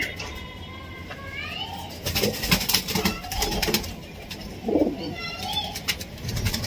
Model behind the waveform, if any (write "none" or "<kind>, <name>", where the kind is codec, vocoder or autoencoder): none